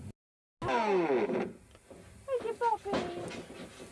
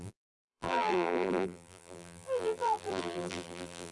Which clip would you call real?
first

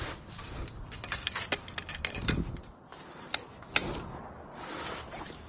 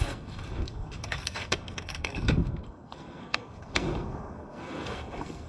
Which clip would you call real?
first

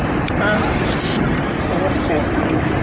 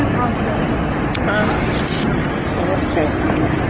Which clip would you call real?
second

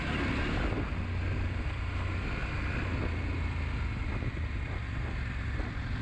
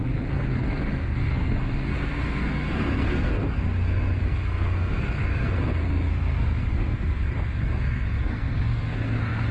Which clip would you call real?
first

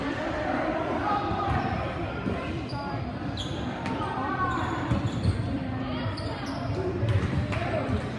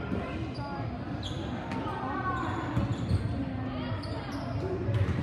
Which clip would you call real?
second